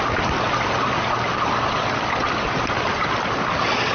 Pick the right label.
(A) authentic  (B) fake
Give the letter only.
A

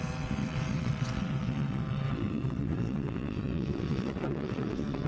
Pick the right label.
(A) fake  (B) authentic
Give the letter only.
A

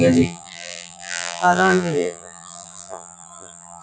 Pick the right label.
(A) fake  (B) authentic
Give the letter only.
A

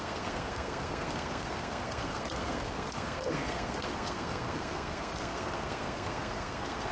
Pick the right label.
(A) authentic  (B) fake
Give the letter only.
B